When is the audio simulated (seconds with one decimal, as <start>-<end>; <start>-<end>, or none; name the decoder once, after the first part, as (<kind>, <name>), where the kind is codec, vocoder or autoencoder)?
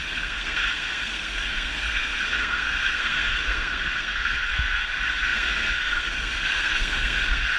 0.0-7.6 (codec, SNAC)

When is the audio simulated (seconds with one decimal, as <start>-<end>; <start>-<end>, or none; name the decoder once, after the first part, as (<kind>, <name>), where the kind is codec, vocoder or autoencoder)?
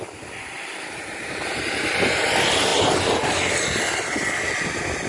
none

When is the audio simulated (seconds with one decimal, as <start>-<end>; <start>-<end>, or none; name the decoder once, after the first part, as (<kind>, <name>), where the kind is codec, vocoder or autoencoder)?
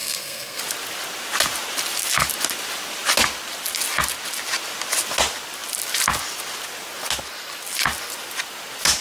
0.0-0.6 (codec, SNAC)